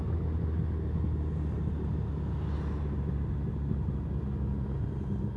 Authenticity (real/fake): real